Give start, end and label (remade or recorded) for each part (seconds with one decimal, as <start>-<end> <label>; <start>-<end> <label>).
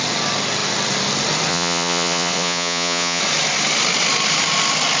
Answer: 0.0-1.5 recorded; 1.5-3.2 remade; 3.2-5.0 recorded